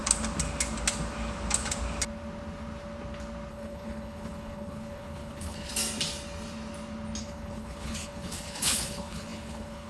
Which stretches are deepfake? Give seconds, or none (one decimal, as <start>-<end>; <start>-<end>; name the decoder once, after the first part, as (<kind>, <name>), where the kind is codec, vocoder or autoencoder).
3.5-5.7 (codec, HILCodec); 7.2-9.9